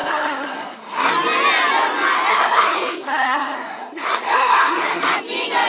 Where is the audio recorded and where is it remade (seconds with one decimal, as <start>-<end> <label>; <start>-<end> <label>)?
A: 0.0-1.1 remade; 1.1-2.3 recorded; 2.3-5.1 remade; 5.1-5.7 recorded